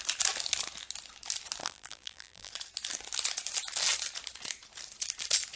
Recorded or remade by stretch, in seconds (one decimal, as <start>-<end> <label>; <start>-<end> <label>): 0.0-1.6 recorded; 1.6-2.5 remade; 2.5-5.6 recorded